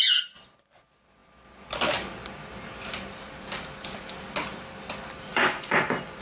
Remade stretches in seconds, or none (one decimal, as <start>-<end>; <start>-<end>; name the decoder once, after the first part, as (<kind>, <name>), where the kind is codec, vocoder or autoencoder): 5.3-6.2 (vocoder, Vocos)